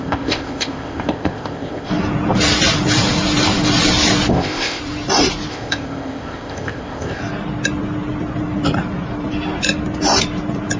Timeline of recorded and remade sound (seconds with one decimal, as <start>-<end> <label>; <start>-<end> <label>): 0.0-1.9 remade; 1.9-4.3 recorded; 4.3-4.8 remade; 4.8-5.5 recorded; 5.5-7.2 remade; 7.2-10.8 recorded